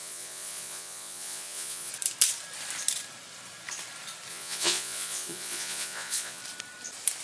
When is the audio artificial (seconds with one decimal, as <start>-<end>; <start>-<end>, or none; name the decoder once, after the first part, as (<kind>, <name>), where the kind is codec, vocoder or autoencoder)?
0.0-1.9 (vocoder, Vocos); 4.3-6.4

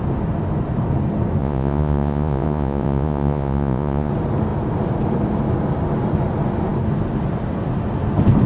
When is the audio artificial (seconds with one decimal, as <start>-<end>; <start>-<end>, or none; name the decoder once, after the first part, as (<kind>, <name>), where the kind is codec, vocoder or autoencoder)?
1.4-4.1 (vocoder, Vocos)

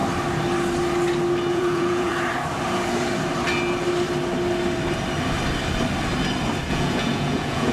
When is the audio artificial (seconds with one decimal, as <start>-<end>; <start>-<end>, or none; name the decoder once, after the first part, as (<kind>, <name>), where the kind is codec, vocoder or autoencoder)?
1.5-2.1 (vocoder, Vocos); 6.7-7.7

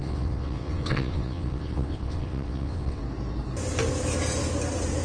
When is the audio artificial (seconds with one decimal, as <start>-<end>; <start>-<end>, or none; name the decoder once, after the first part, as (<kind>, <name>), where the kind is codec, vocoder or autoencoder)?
0.0-3.0 (vocoder, WaveNeXt)

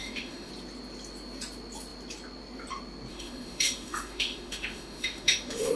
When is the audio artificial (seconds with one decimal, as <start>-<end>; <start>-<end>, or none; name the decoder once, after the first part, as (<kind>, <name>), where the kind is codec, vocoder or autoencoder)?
0.0-0.5 (autoencoder, DAC-VAE); 3.1-5.8